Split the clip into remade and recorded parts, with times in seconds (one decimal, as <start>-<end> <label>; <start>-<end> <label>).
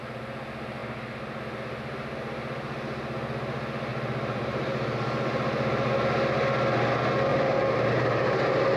0.0-0.8 recorded; 0.8-1.4 remade; 1.4-3.9 recorded; 3.9-5.9 remade; 5.9-7.3 recorded; 7.3-8.8 remade